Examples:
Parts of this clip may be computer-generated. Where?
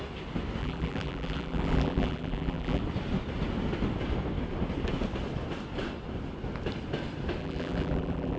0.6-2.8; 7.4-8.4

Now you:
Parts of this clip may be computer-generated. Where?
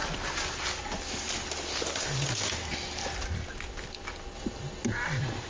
none